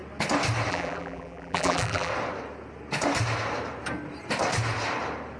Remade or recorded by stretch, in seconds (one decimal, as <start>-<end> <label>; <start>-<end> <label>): 0.0-0.7 recorded; 0.7-2.1 remade; 2.1-5.4 recorded